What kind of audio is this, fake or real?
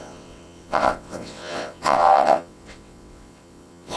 fake